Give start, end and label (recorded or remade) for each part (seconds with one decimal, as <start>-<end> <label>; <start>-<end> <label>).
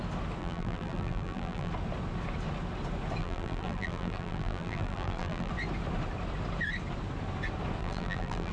0.0-0.4 recorded; 0.4-1.7 remade; 1.7-3.2 recorded; 3.2-5.5 remade; 5.5-7.8 recorded; 7.8-8.5 remade